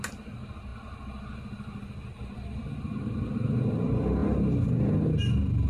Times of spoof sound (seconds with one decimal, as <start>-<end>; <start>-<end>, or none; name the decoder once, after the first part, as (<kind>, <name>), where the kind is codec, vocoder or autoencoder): none